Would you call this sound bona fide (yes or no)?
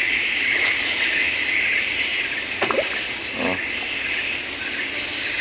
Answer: yes